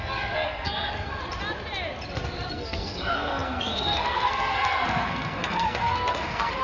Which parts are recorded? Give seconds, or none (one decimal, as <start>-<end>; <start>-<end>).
1.2-2.5